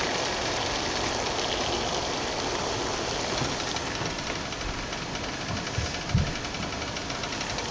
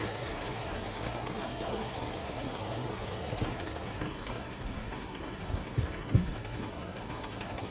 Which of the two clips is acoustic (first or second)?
first